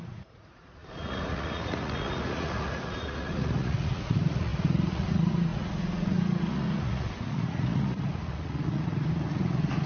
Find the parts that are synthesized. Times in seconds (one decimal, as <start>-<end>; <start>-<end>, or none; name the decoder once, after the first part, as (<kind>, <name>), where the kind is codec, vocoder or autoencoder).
0.0-9.9 (vocoder, Vocos)